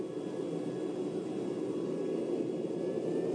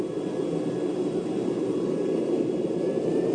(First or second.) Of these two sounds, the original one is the first